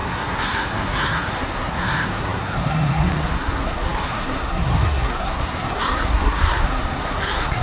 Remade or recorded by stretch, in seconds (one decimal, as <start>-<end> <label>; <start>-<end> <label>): 0.0-7.6 remade